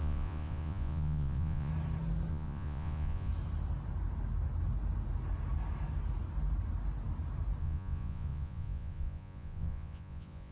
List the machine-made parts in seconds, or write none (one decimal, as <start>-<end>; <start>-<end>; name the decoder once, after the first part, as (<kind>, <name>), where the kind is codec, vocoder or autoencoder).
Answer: 0.0-1.7 (vocoder, Vocos); 2.3-3.3; 7.6-10.5